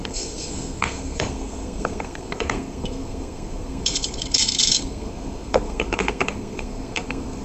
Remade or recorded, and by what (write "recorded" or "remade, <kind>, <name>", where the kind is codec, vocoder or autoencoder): remade, codec, SNAC